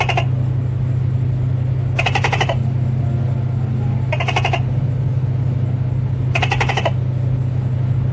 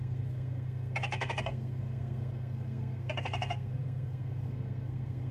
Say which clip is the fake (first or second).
second